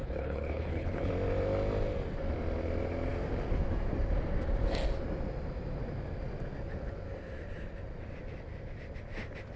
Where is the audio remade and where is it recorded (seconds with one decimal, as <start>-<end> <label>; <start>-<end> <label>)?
0.0-1.1 remade; 1.1-9.6 recorded

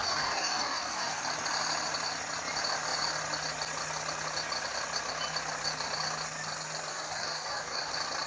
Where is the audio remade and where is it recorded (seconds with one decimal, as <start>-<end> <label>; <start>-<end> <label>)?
0.0-1.2 remade; 1.2-6.9 recorded; 6.9-7.9 remade; 7.9-8.3 recorded

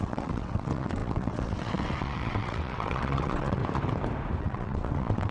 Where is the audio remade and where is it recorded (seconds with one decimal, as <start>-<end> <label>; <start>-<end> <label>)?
0.0-3.6 remade; 3.6-4.4 recorded; 4.4-5.3 remade